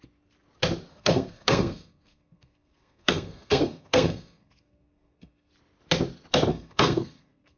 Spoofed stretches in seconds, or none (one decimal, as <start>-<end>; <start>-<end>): 0.9-5.5; 6.5-7.6